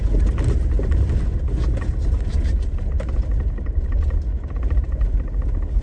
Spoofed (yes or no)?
no